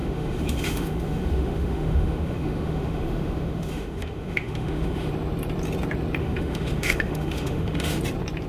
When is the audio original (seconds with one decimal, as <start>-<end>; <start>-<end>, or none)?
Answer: 5.1-6.2; 8.0-8.5